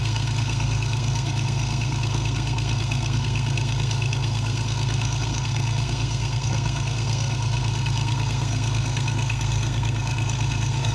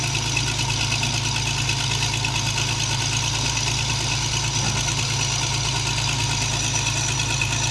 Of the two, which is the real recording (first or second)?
second